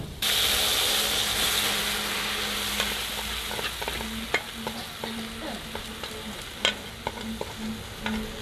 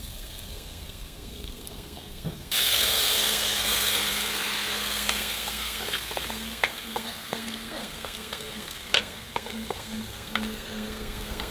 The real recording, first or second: first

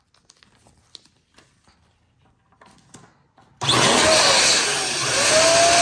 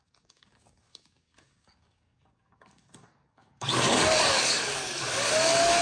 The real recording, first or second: first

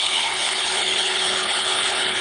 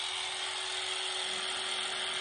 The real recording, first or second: second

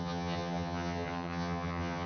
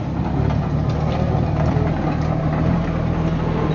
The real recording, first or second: second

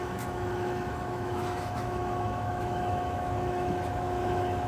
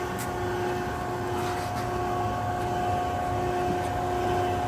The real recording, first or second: second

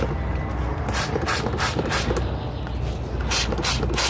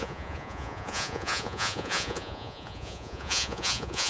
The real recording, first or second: first